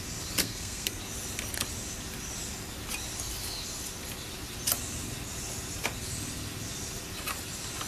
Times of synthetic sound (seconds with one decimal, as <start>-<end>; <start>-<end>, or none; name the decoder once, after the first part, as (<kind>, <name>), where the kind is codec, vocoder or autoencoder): 0.4-1.0 (codec, SNAC)